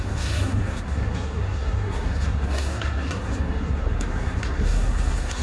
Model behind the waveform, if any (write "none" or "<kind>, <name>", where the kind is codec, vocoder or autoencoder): codec, SNAC